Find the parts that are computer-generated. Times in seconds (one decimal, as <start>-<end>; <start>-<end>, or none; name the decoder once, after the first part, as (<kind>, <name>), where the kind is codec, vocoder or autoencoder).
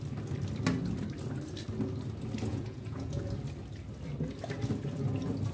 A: 2.5-3.2 (vocoder, Vocos)